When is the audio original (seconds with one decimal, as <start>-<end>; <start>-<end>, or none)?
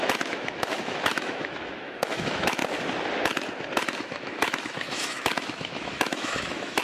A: 2.6-3.7